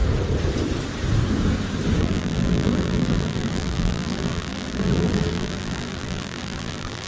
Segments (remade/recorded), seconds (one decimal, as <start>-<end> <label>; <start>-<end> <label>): 0.0-2.0 recorded; 2.0-7.1 remade